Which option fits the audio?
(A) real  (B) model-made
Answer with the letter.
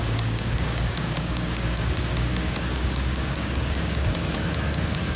B